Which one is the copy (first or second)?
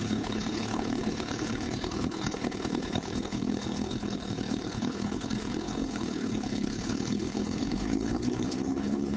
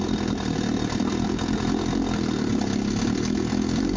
first